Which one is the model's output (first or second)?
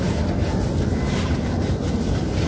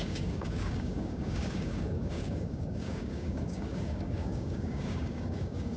second